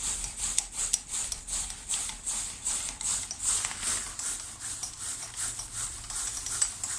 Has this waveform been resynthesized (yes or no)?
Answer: no